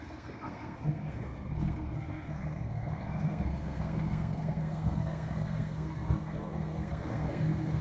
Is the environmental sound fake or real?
fake